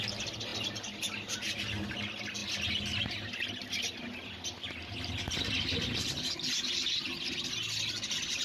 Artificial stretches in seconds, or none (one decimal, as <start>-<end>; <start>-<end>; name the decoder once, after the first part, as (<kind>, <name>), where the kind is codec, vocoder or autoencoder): none